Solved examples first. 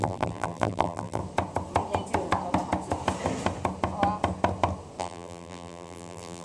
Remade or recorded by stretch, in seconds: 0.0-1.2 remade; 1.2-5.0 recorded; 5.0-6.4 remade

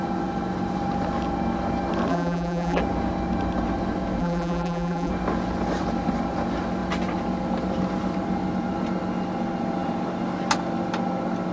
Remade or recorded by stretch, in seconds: 0.0-2.1 recorded; 2.1-2.8 remade; 2.8-4.2 recorded; 4.2-5.1 remade; 5.1-11.5 recorded

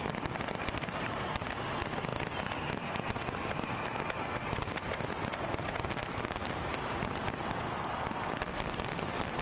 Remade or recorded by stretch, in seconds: 0.0-9.4 recorded

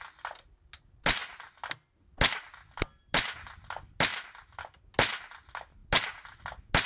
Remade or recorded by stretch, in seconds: 0.0-6.9 recorded

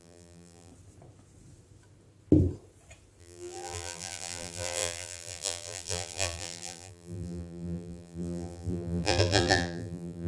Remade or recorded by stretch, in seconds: 0.0-0.7 remade; 0.7-3.2 recorded; 3.2-10.3 remade